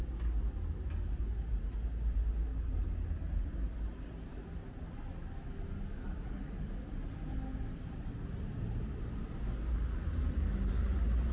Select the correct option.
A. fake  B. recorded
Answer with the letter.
B